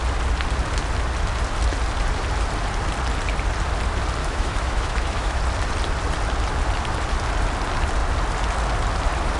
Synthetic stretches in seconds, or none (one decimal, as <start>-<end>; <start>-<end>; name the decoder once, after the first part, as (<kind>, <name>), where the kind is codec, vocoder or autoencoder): 4.2-5.4 (autoencoder, DAC-VAE)